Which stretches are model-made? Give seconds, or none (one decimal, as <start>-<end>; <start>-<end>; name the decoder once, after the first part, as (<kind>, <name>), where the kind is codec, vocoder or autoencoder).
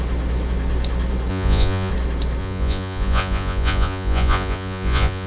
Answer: 1.3-1.9 (vocoder, Vocos); 2.4-5.3